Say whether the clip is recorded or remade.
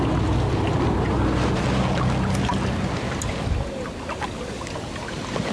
recorded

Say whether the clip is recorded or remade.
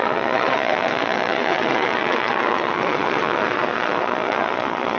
remade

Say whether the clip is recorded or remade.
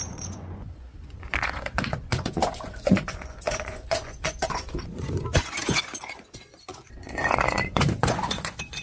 remade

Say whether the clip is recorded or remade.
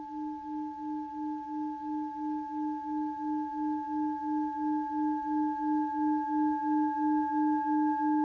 recorded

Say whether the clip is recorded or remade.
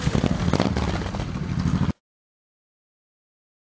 recorded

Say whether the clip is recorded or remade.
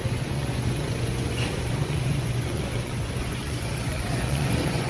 remade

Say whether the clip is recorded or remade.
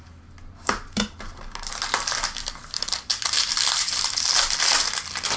recorded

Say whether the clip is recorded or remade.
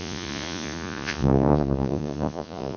remade